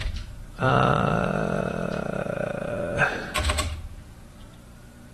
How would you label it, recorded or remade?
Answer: remade